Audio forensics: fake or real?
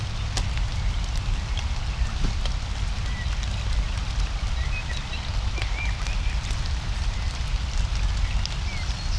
real